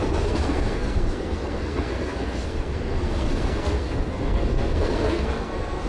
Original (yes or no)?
no